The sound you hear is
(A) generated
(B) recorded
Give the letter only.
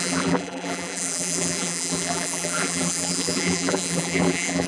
A